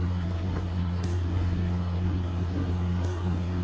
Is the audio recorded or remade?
remade